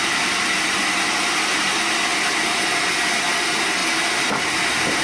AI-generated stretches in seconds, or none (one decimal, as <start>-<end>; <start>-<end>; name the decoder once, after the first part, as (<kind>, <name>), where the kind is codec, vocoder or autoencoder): none